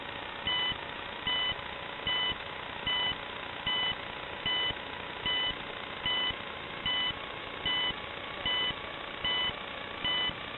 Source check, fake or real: real